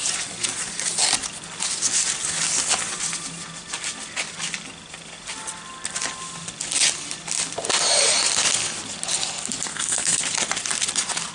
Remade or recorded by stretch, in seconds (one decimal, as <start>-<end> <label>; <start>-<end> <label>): 0.0-9.7 recorded; 9.7-10.2 remade; 10.2-11.3 recorded

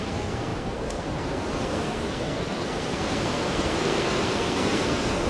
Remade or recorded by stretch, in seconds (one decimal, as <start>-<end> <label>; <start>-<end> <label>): 0.0-5.3 remade

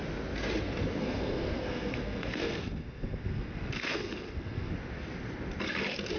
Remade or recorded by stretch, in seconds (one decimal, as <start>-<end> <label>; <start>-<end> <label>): 0.0-1.0 recorded; 1.0-4.7 remade; 4.7-6.2 recorded